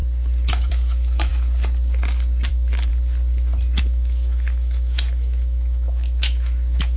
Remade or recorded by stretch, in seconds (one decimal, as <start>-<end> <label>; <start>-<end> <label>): 0.0-0.7 recorded; 0.7-1.3 remade; 1.3-2.5 recorded; 2.5-2.9 remade; 2.9-3.8 recorded; 3.8-7.0 remade